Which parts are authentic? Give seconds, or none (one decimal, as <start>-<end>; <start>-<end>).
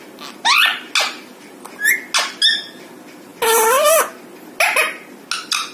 0.0-5.7